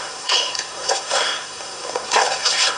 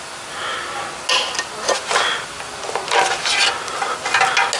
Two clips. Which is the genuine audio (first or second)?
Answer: second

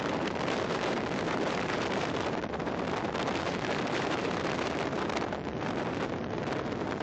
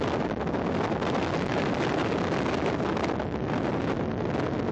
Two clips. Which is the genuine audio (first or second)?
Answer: second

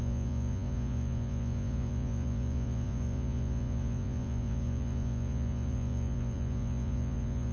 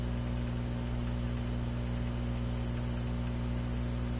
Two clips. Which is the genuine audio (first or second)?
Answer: second